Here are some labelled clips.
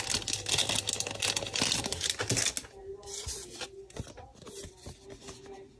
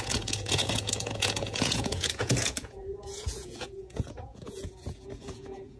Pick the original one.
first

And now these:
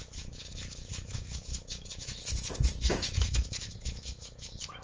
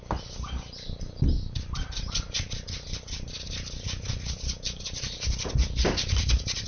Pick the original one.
second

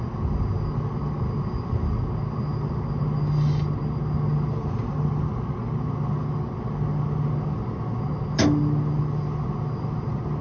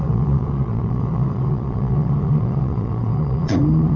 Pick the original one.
first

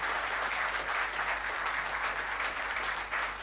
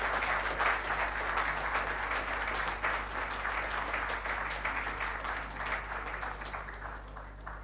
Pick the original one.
second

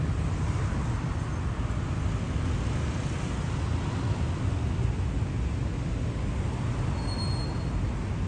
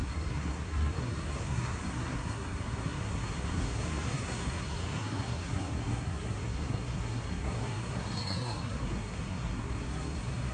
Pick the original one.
first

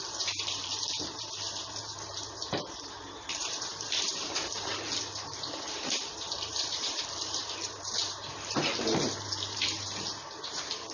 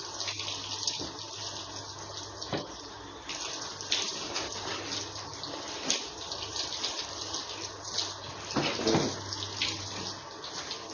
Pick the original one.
second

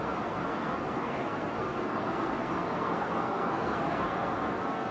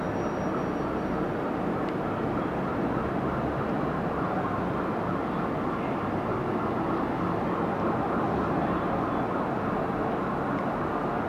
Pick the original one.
second